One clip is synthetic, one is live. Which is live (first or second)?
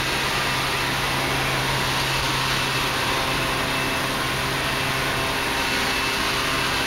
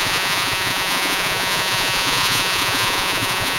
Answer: first